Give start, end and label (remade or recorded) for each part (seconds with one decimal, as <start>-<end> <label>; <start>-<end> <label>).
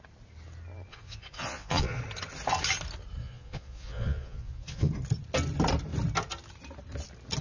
0.0-0.9 recorded; 0.9-2.0 remade; 2.0-3.2 recorded; 3.2-4.9 remade; 4.9-7.4 recorded